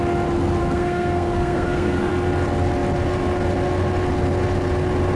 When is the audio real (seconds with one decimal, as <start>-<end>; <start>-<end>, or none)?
0.0-0.6; 2.1-5.2